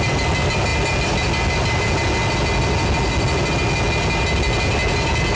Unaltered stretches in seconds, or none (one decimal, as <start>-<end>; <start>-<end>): 0.0-5.3